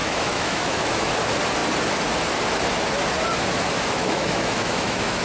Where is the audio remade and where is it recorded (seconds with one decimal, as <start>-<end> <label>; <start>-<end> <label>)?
0.0-1.1 remade; 1.1-4.0 recorded; 4.0-5.2 remade